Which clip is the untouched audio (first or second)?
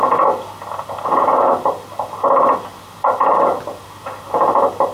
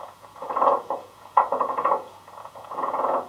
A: first